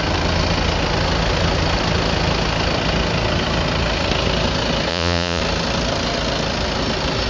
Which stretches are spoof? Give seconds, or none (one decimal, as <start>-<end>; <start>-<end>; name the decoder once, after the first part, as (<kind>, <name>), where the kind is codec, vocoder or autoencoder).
4.9-5.4 (vocoder, Vocos)